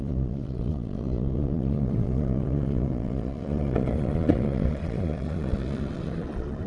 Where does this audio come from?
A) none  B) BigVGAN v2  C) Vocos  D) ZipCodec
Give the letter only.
C